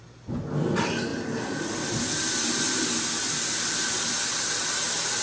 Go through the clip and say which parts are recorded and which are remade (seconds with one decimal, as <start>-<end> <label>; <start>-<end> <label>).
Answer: 0.0-5.2 recorded